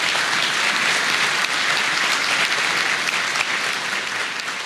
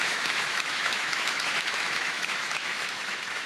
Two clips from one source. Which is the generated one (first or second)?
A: second